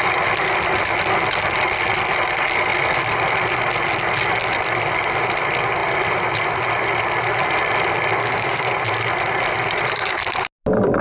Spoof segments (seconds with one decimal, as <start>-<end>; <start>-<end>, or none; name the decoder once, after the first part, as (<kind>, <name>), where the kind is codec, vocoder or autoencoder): 8.2-8.7 (codec, DAC)